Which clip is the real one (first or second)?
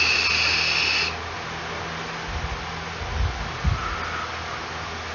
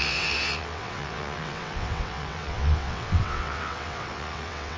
first